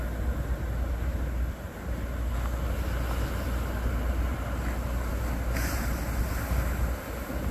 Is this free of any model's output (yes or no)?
yes